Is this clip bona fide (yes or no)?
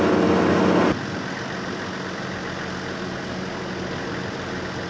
yes